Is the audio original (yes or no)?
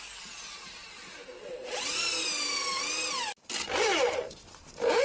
yes